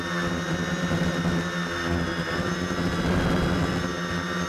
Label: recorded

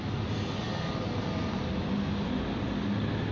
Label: recorded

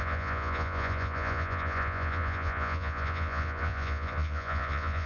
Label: remade